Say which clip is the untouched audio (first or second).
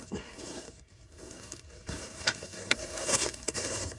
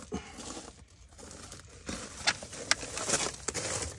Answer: second